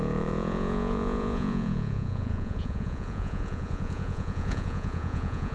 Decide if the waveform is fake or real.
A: fake